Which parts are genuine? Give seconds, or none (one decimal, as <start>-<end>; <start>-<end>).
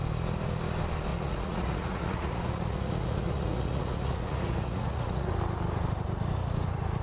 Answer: 0.0-1.1; 5.3-7.0